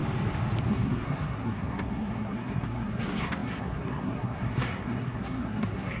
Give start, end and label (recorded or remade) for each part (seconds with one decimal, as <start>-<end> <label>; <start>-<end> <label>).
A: 0.0-0.6 recorded; 0.6-6.0 remade